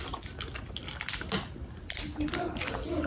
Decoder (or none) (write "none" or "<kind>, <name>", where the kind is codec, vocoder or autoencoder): none